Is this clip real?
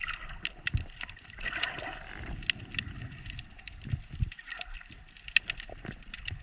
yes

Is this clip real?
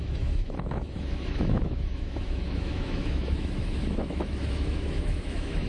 no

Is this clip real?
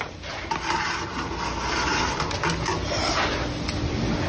yes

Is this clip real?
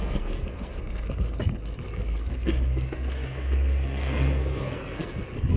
no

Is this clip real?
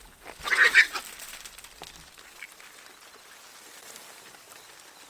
yes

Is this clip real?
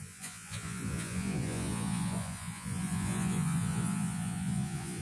no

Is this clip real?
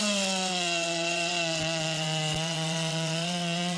no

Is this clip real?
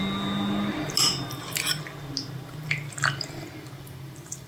yes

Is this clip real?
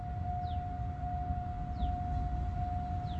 yes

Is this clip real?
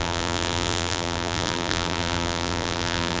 no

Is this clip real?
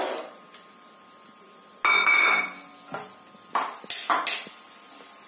yes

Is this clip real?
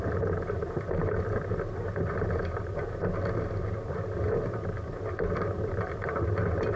yes